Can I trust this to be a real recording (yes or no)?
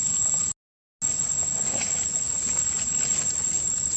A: yes